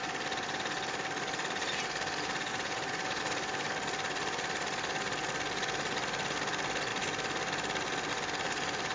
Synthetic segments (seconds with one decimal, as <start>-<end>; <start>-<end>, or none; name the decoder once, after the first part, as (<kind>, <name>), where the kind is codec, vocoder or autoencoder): 2.5-3.2 (vocoder, Vocos)